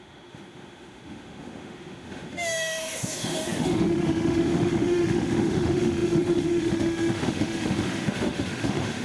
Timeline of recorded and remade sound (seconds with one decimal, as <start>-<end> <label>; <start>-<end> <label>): 0.0-9.0 remade